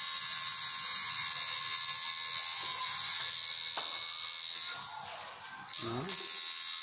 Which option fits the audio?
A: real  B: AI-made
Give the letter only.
A